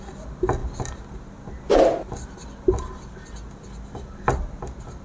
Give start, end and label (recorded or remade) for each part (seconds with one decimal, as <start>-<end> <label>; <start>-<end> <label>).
0.0-5.0 recorded